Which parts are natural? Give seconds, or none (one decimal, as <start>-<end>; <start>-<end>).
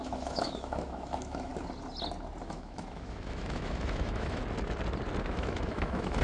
1.5-2.4; 4.4-5.2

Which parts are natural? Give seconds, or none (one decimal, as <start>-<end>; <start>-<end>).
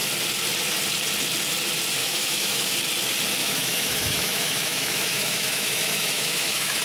0.0-2.0; 2.7-3.4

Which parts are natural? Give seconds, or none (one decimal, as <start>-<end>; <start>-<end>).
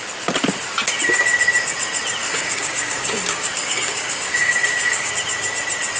0.0-2.2; 5.1-6.0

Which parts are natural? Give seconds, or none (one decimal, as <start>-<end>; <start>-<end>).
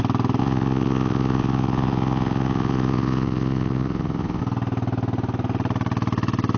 0.0-0.4; 4.4-6.6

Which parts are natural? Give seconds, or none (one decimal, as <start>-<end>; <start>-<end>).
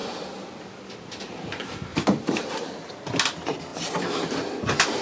0.0-1.9; 2.8-5.0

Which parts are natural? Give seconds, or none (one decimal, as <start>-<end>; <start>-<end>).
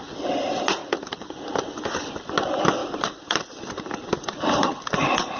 0.0-0.8; 1.3-2.8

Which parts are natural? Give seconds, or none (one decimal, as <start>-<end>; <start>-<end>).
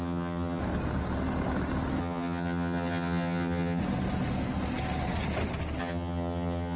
0.6-2.0; 3.8-5.8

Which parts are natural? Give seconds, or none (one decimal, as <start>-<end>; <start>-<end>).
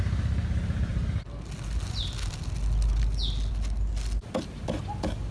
0.0-5.3